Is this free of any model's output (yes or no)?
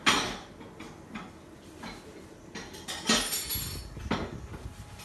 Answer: yes